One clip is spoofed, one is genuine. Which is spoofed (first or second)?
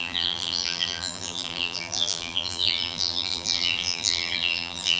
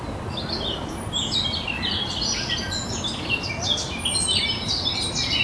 first